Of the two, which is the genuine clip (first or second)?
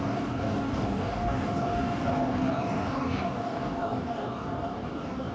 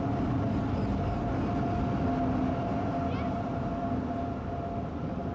second